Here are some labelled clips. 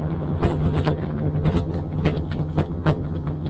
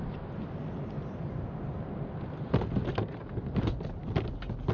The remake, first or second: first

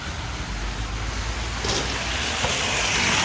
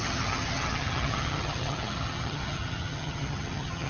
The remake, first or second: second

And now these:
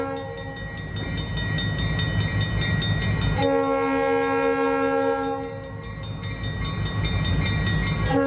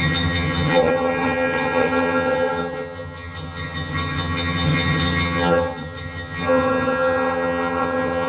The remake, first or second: second